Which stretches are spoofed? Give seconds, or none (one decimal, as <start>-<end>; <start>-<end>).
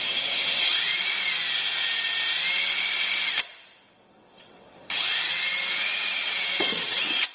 0.0-0.9; 4.1-7.3